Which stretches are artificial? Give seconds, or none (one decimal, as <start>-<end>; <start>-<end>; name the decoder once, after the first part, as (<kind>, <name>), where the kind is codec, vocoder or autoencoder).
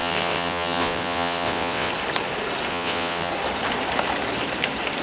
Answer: 0.0-1.9 (vocoder, WaveNeXt); 2.7-3.3